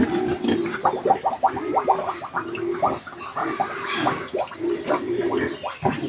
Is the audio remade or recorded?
recorded